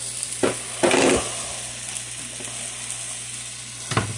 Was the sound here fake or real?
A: real